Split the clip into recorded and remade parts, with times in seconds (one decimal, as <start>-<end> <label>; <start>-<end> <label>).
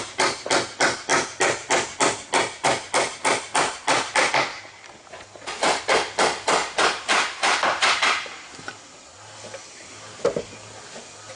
0.0-4.5 recorded; 4.5-5.8 remade; 5.8-6.6 recorded; 6.6-8.7 remade; 8.7-11.4 recorded